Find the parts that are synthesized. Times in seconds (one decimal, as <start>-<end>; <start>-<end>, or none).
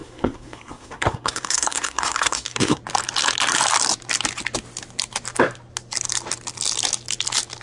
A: 0.0-2.8